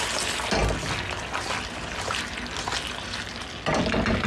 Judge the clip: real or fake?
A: real